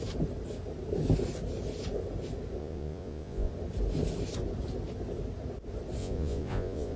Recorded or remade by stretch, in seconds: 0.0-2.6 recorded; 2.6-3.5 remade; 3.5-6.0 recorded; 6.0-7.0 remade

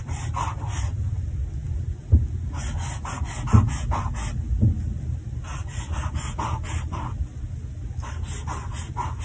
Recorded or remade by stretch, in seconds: 0.0-9.2 recorded

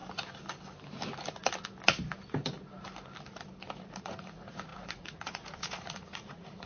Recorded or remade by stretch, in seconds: 0.0-4.0 recorded; 4.0-6.7 remade

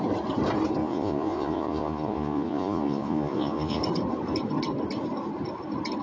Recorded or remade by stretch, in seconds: 0.0-0.8 recorded; 0.8-3.8 remade; 3.8-6.0 recorded

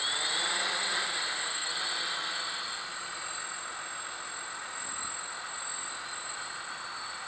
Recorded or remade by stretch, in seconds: 0.0-7.3 recorded

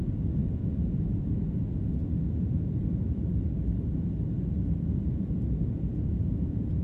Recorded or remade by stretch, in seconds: 0.0-2.0 remade; 2.0-5.1 recorded; 5.1-6.8 remade

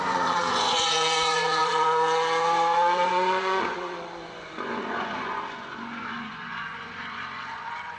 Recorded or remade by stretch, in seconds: 0.0-8.0 remade